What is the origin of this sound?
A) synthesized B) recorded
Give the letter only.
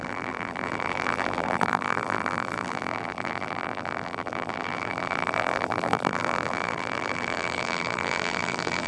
A